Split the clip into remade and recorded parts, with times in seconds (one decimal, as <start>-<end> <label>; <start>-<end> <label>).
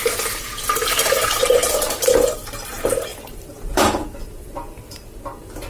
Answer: 0.0-1.4 recorded; 1.4-2.2 remade; 2.2-3.1 recorded; 3.1-5.2 remade; 5.2-5.7 recorded